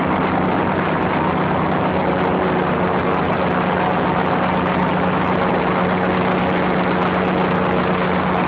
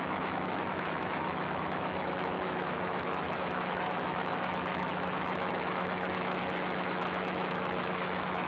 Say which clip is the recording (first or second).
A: first